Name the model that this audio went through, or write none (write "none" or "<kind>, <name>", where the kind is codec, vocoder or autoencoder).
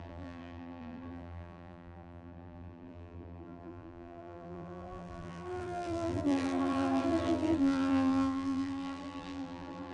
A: vocoder, BigVGAN v2